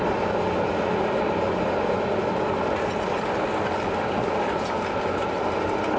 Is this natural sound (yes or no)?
yes